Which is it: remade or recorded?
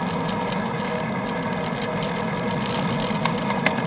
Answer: recorded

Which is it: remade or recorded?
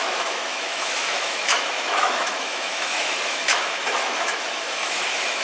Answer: remade